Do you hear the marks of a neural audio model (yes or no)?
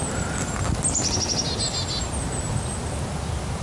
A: no